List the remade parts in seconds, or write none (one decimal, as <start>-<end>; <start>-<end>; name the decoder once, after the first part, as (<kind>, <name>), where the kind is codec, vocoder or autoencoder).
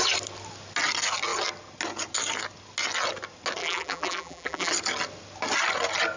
3.6-4.7 (vocoder, BigVGAN v2)